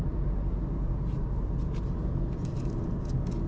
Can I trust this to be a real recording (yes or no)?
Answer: yes